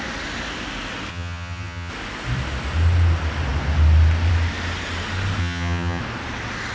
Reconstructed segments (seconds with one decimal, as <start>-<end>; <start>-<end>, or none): 1.1-1.9; 5.4-6.0